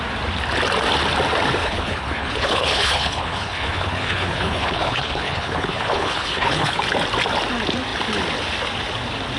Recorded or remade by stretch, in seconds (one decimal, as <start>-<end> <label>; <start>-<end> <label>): 0.0-1.6 recorded; 1.6-6.8 remade; 6.8-9.4 recorded